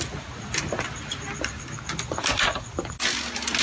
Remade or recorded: recorded